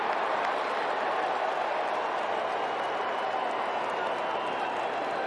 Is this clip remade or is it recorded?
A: recorded